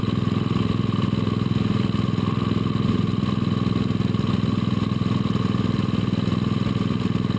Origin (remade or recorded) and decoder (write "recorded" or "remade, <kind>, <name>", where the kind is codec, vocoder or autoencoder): recorded